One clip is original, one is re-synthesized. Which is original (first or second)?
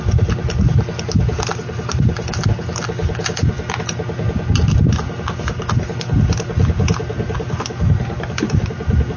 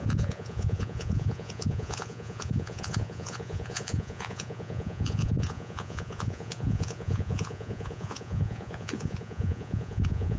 first